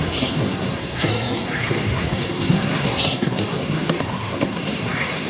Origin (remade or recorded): remade